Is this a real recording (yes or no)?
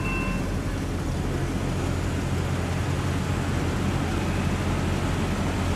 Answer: yes